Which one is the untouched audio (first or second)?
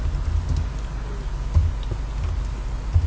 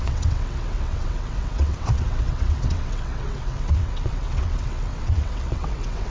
first